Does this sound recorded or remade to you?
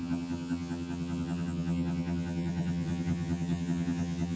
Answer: remade